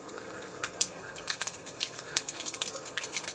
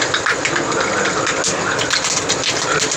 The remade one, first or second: first